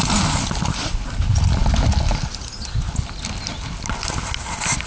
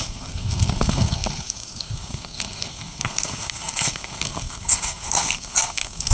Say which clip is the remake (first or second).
second